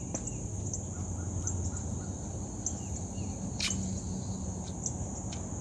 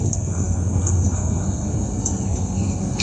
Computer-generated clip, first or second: second